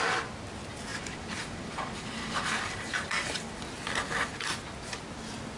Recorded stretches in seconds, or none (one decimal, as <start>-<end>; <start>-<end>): 0.0-0.9; 3.6-5.6